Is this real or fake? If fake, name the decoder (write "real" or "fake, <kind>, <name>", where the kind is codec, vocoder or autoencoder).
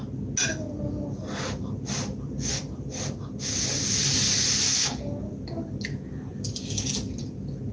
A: real